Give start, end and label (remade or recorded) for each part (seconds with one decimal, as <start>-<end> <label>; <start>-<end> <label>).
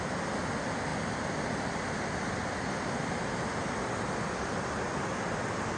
0.0-5.8 recorded